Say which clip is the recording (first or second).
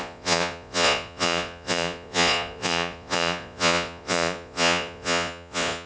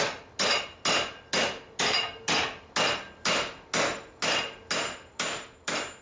second